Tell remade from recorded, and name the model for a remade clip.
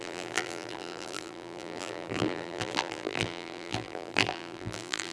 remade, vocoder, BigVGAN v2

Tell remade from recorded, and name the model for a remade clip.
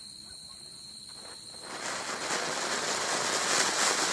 recorded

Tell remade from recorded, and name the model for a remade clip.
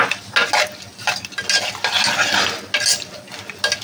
recorded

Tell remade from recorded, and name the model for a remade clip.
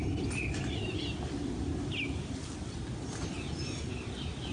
recorded